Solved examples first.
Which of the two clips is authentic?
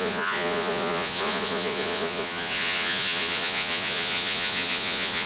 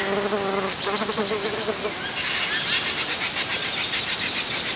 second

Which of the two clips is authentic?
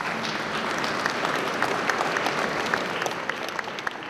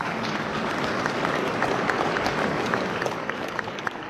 first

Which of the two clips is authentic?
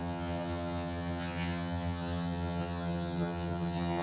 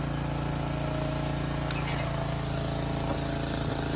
second